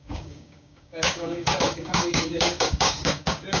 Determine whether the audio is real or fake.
fake